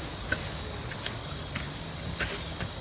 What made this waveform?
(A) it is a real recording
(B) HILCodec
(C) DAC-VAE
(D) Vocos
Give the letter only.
A